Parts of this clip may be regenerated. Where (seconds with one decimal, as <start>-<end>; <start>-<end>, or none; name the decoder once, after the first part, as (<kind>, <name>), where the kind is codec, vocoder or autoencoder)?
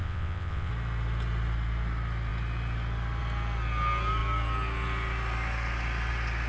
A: 0.0-0.7 (vocoder, WaveNeXt)